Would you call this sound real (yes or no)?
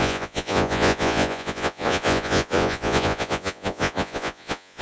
no